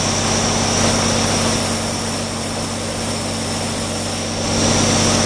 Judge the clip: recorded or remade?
recorded